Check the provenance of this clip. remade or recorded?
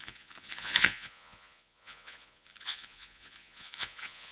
remade